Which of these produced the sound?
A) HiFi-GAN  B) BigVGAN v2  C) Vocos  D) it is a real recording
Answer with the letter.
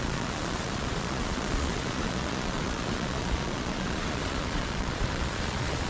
C